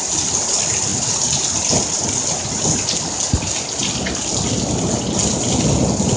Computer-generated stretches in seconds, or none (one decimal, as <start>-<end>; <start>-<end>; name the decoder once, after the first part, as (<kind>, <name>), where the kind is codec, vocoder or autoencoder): none